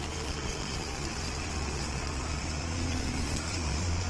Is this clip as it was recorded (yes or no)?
no